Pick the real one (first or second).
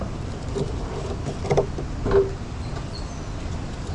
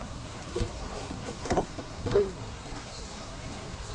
first